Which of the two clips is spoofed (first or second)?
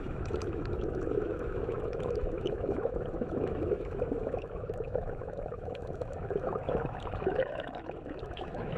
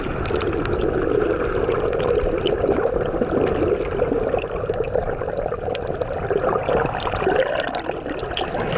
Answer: first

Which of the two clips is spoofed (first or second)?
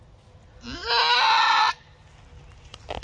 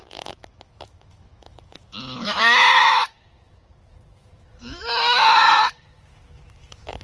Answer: second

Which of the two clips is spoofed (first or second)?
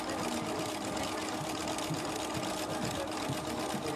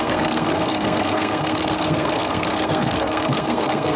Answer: second